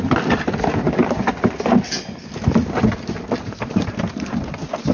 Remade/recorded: recorded